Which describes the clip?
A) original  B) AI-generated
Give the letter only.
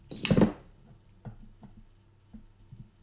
A